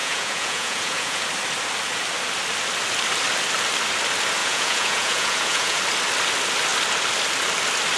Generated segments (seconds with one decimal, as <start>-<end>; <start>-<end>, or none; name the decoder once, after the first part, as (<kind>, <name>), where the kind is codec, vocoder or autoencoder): 0.0-1.2 (vocoder, Vocos); 4.4-5.8